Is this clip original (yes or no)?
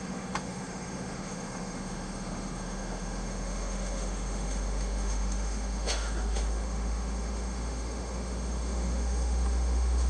no